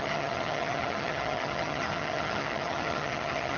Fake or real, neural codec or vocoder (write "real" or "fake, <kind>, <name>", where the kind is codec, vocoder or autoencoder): fake, vocoder, HiFi-GAN